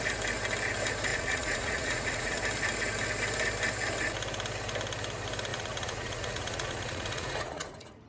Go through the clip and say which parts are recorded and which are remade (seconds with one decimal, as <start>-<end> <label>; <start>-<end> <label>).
0.0-1.1 recorded; 1.1-2.4 remade; 2.4-5.5 recorded; 5.5-8.1 remade